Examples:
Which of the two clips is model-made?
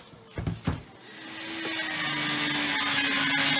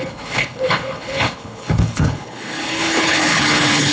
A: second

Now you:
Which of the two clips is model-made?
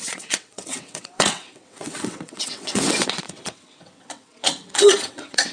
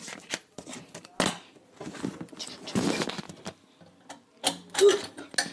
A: first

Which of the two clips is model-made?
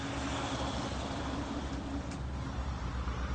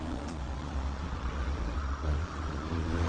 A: second